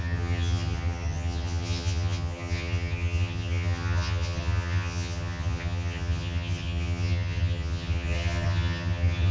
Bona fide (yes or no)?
no